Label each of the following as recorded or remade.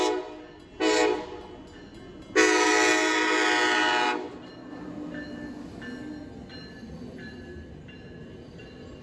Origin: recorded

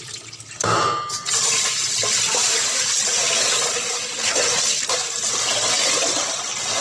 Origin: recorded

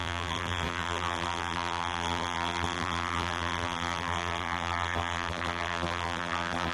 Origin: remade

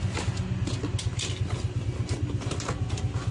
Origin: recorded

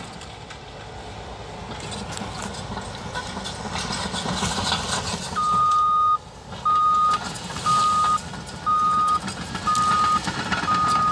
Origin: recorded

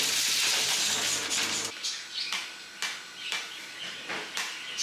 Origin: recorded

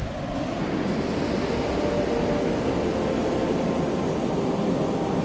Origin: recorded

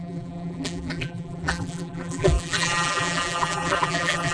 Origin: remade